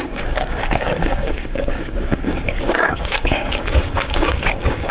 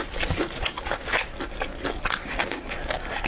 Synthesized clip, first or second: first